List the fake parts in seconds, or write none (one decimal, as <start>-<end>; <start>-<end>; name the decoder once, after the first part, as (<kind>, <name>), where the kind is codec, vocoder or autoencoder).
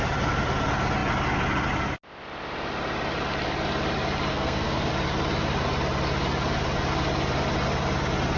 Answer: 4.3-4.9 (codec, SNAC)